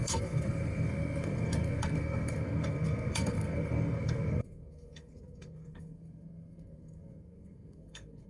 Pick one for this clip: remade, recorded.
remade